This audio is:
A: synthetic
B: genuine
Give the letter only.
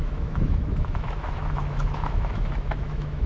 A